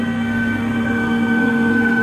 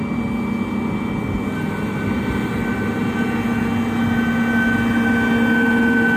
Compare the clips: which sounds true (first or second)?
second